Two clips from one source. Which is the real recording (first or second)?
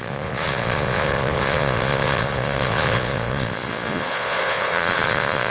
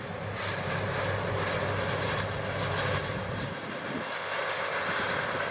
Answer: second